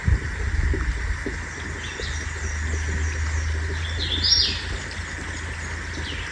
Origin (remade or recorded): recorded